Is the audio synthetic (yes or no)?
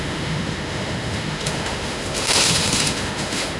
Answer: yes